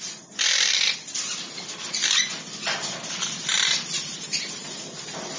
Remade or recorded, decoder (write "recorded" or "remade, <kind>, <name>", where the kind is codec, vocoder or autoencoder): remade, vocoder, BigVGAN v2